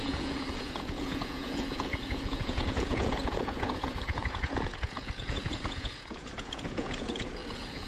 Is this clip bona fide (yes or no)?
no